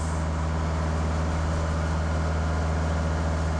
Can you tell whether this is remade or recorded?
recorded